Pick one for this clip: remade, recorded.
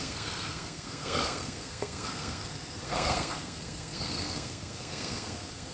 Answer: remade